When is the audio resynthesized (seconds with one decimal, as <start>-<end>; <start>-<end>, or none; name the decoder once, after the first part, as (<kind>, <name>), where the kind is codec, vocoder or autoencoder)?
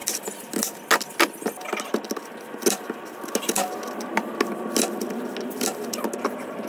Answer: none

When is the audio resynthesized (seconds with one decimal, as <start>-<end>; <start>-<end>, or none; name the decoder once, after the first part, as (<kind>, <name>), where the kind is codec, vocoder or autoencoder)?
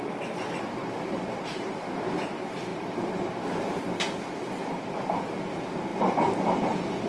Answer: 0.8-2.1 (vocoder, BigVGAN v2); 2.7-3.3; 5.9-6.4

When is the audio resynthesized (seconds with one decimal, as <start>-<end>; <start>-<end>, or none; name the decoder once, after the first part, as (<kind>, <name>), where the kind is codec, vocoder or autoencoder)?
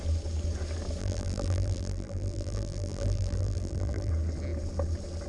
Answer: 1.0-4.1 (vocoder, BigVGAN v2)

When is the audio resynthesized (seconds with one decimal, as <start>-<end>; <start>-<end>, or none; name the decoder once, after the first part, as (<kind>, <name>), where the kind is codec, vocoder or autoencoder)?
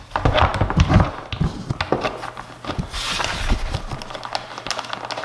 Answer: none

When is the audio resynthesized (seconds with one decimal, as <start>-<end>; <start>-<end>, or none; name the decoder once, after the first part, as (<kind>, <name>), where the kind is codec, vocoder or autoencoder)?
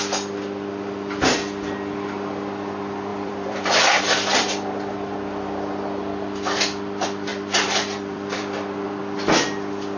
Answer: 3.1-4.0 (vocoder, BigVGAN v2); 7.3-9.0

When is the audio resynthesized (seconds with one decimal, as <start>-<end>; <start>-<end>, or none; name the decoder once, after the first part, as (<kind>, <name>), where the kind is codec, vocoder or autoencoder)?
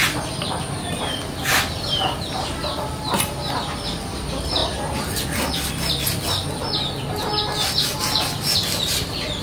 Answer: 0.0-4.6 (vocoder, BigVGAN v2); 8.0-9.4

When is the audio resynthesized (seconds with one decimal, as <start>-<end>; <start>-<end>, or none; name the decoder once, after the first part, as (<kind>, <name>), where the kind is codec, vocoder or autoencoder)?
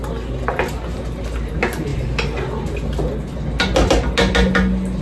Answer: none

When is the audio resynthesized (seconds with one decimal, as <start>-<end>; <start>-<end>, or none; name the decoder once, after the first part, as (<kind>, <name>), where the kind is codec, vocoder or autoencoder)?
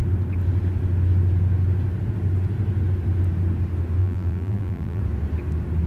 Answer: 4.0-5.0 (vocoder, BigVGAN v2)